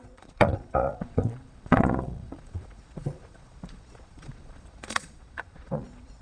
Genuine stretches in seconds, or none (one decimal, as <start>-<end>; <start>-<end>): none